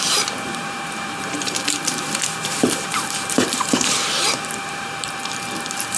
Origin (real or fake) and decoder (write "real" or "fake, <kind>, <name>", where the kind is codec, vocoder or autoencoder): fake, vocoder, BigVGAN v2